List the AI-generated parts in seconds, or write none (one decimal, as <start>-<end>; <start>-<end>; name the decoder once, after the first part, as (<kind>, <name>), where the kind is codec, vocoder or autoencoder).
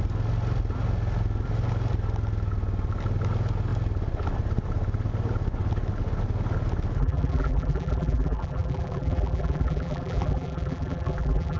7.0-11.6 (vocoder, BigVGAN v2)